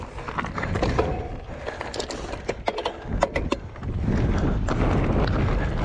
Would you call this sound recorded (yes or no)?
yes